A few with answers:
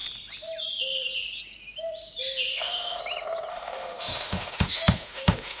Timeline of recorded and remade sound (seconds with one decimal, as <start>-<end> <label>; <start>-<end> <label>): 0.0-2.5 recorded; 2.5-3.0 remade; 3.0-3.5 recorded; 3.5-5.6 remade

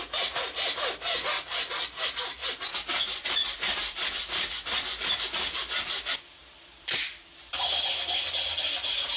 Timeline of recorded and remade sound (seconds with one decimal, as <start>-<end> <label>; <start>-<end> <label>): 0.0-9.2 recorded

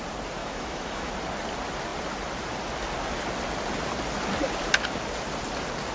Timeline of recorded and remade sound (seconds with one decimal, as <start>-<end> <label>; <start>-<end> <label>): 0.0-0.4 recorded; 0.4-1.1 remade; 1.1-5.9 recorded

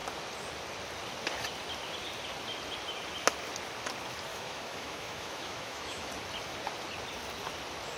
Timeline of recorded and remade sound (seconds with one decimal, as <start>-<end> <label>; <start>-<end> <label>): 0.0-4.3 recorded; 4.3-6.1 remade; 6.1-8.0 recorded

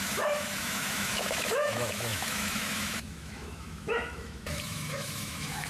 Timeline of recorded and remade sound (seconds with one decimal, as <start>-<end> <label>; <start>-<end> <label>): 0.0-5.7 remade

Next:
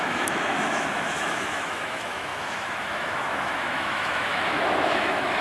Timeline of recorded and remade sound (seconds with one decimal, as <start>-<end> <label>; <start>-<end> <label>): 0.0-5.4 remade